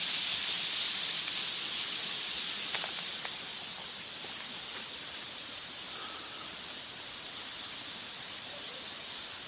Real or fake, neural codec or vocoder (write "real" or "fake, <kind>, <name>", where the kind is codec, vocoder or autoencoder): real